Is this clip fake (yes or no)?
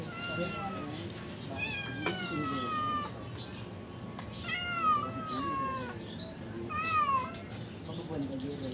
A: no